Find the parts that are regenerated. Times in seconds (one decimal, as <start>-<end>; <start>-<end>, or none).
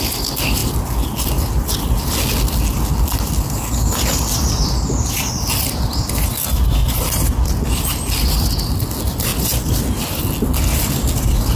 none